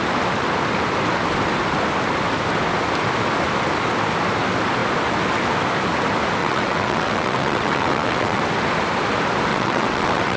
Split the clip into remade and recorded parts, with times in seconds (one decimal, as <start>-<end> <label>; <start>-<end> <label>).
0.0-6.4 recorded; 6.4-8.4 remade; 8.4-9.5 recorded; 9.5-10.4 remade